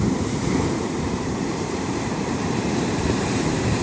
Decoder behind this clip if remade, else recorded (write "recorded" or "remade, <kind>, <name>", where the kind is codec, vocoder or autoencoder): remade, vocoder, BigVGAN v2